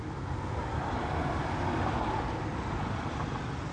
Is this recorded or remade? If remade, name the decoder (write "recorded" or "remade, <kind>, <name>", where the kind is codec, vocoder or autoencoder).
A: recorded